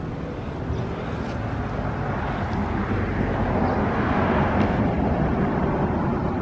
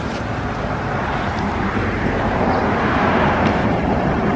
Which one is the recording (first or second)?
first